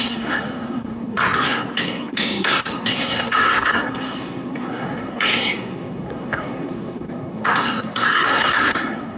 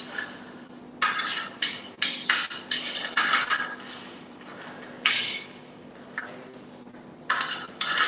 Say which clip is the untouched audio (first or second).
second